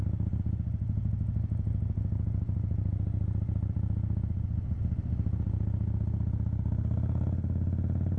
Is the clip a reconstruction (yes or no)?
no